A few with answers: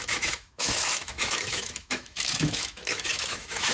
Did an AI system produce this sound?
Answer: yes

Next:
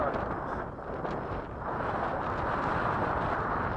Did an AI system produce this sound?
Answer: no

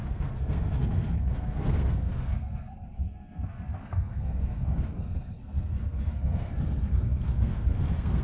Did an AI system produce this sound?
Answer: yes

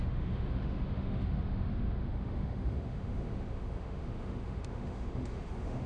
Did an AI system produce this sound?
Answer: yes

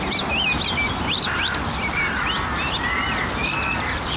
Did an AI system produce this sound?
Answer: no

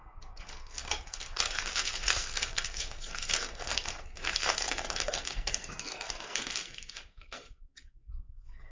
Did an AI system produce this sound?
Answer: yes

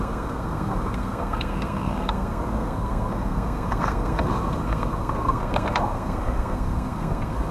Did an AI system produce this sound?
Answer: yes